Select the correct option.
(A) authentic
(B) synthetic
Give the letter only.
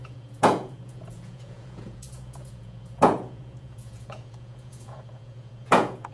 B